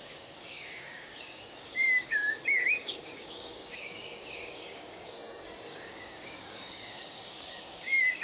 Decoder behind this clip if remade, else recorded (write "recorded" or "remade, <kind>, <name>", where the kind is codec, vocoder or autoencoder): remade, codec, DAC